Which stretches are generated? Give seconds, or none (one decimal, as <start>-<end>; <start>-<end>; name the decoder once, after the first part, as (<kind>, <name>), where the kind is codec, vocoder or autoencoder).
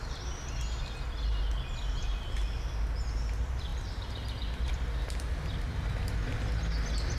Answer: none